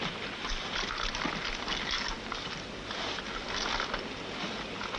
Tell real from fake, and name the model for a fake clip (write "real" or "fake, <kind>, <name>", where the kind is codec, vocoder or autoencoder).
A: real